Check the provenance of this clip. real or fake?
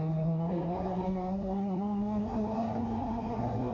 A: fake